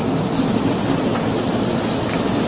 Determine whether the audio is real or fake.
real